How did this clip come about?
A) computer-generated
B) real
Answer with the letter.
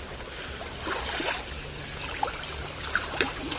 B